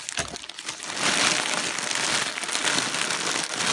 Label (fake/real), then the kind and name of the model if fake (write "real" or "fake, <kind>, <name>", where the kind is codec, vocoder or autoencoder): real